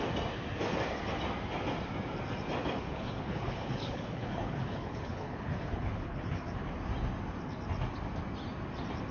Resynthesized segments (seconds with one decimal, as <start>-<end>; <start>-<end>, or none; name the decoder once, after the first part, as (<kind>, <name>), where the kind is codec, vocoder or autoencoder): 2.6-6.7 (codec, HILCodec)